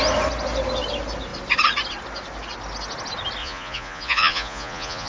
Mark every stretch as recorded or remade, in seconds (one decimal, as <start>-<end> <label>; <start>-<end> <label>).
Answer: 0.0-3.4 recorded; 3.4-5.1 remade